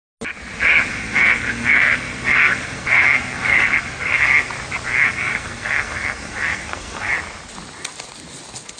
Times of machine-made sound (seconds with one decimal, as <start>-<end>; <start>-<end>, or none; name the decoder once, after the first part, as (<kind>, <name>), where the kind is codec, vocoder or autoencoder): 0.9-4.5 (codec, SNAC); 4.9-7.1